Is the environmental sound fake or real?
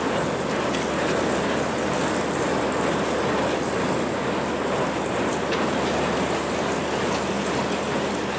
real